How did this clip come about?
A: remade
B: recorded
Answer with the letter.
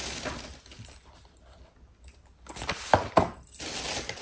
B